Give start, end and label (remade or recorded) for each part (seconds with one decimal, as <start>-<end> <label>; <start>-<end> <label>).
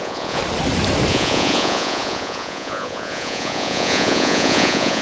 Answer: 0.0-0.4 remade; 0.4-1.1 recorded; 1.1-5.0 remade